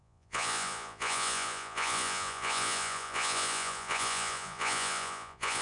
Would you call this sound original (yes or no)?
no